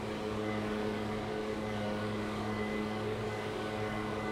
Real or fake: fake